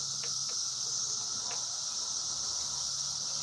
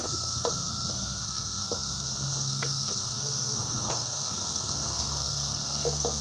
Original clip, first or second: first